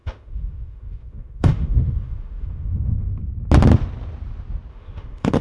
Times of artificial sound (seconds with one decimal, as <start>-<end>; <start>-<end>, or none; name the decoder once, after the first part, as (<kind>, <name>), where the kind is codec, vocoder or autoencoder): 0.0-3.2 (autoencoder, DAC-VAE); 4.7-5.4